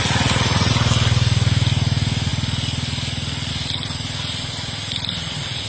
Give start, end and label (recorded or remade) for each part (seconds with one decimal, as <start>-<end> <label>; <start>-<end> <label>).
0.0-0.7 remade; 0.7-5.7 recorded